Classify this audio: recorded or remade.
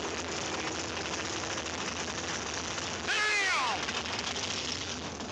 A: recorded